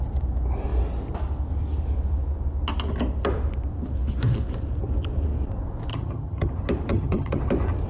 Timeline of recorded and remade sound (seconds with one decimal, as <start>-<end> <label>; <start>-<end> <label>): 0.0-5.9 recorded; 5.9-6.5 remade; 6.5-6.9 recorded; 6.9-7.4 remade; 7.4-7.9 recorded